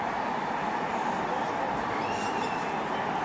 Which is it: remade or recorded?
recorded